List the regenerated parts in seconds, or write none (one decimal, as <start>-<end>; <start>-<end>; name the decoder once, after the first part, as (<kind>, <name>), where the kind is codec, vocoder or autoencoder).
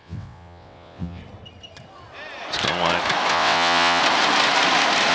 0.0-1.2 (vocoder, WaveNeXt); 3.3-4.0